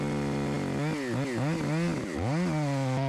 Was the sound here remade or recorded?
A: recorded